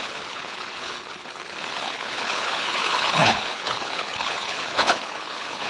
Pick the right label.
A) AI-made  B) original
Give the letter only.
A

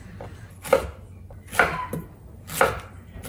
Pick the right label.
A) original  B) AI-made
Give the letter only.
A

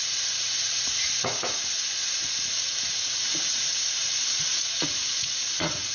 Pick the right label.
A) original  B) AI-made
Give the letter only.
B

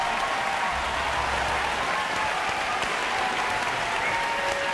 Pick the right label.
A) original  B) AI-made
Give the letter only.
A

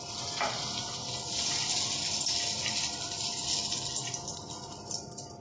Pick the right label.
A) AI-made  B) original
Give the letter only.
B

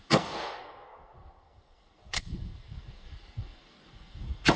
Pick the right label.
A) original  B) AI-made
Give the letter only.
B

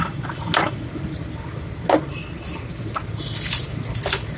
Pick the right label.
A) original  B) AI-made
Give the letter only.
A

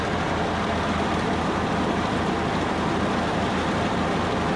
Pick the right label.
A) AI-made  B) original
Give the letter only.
B